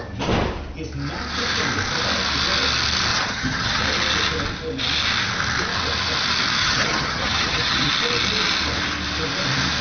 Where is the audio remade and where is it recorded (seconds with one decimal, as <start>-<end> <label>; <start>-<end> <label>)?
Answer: 0.0-3.1 recorded; 3.1-3.8 remade; 3.8-6.6 recorded; 6.6-7.9 remade; 7.9-9.8 recorded